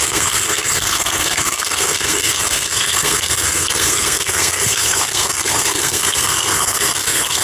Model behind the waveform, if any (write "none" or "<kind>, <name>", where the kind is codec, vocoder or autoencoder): codec, SNAC